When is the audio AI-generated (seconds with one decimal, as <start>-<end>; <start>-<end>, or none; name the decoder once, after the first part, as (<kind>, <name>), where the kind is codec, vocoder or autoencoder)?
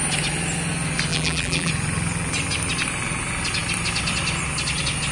1.1-1.7 (vocoder, BigVGAN v2)